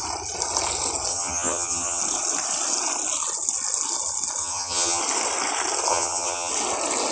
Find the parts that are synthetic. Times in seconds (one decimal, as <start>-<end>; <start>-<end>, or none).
1.1-2.0; 4.4-5.0; 5.9-6.5